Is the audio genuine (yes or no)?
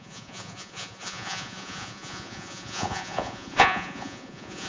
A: no